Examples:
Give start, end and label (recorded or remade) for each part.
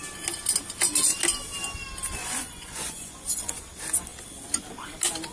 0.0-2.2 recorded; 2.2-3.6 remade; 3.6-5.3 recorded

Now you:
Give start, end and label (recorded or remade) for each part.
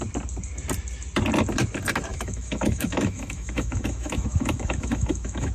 0.0-2.1 recorded; 2.1-5.5 remade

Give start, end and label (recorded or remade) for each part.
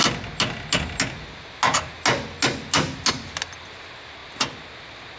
0.0-5.2 recorded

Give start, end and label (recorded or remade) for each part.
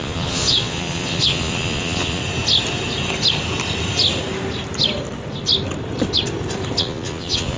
0.0-2.2 remade; 2.2-6.8 recorded; 6.8-7.6 remade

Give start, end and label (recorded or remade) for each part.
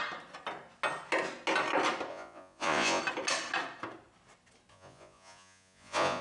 0.0-2.1 recorded; 2.1-3.0 remade; 3.0-4.7 recorded; 4.7-6.2 remade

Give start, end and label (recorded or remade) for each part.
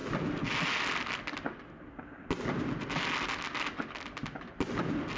0.0-5.2 recorded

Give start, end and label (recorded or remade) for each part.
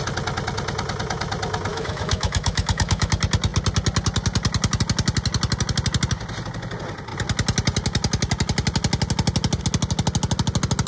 0.0-1.7 recorded; 1.7-3.1 remade; 3.1-10.9 recorded